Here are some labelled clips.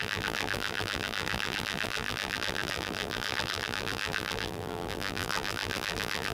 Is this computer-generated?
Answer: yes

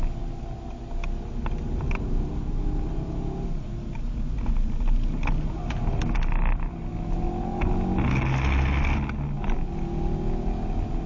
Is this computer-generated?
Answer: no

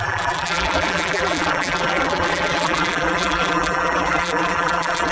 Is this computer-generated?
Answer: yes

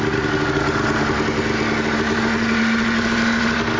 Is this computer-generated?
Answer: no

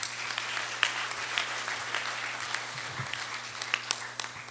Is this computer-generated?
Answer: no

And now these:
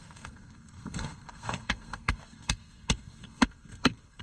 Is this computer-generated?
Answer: yes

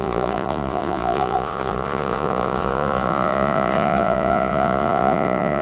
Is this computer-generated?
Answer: yes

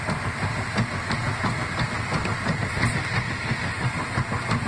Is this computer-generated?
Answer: no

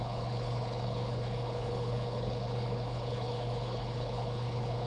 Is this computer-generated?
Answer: yes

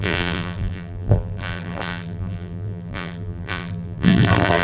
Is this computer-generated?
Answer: yes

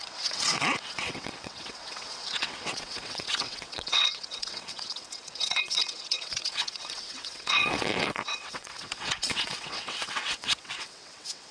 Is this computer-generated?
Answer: yes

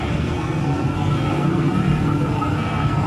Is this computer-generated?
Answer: yes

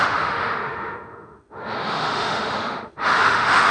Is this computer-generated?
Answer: yes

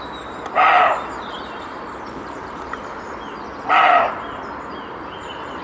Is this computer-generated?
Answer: no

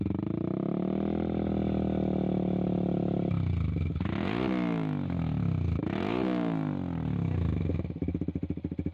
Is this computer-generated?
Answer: no